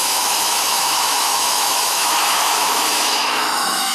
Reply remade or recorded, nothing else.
remade